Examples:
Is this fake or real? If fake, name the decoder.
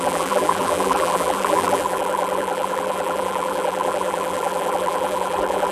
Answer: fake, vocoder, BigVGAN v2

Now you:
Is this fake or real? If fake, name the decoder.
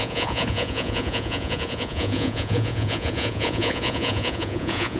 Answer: fake, vocoder, Vocos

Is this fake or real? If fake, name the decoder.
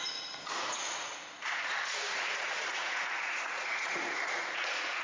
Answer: fake, vocoder, Vocos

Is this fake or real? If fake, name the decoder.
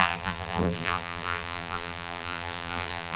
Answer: fake, vocoder, BigVGAN v2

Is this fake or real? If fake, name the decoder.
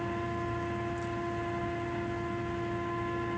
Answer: real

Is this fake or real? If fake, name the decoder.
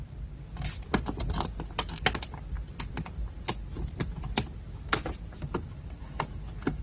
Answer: real